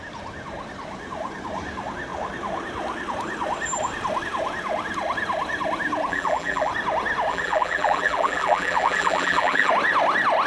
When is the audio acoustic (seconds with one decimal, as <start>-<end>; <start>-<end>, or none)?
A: 0.0-6.1; 6.7-7.3; 9.7-10.5